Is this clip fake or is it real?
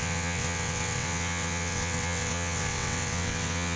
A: fake